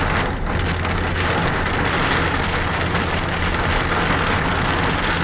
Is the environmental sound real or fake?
real